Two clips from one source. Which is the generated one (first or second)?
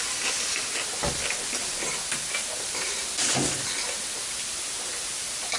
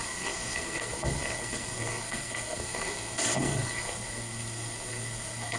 second